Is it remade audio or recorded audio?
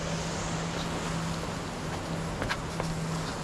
recorded